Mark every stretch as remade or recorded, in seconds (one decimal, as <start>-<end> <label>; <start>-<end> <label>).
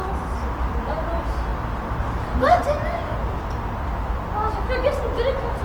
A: 0.0-5.6 recorded